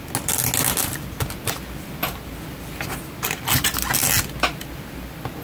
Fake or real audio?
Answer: real